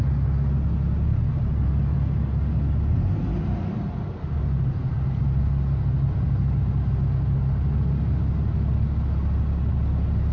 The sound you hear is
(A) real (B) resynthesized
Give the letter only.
A